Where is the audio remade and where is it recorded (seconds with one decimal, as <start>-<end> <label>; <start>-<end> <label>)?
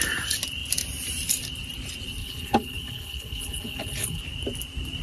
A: 0.0-2.2 recorded; 2.2-4.2 remade; 4.2-5.0 recorded